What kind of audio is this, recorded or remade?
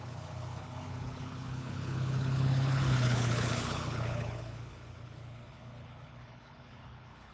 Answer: remade